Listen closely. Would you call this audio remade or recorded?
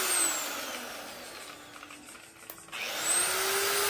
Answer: recorded